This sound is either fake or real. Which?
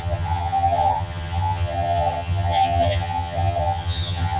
fake